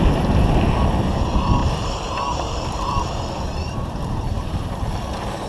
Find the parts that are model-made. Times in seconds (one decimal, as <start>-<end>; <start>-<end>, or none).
1.6-4.9